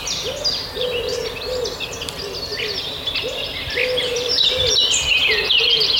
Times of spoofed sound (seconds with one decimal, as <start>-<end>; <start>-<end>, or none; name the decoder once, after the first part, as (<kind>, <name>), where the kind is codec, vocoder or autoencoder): none